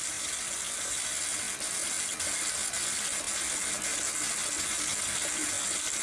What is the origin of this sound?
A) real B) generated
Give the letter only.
A